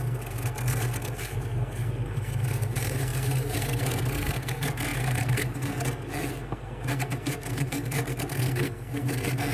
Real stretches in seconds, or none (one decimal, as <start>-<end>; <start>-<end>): none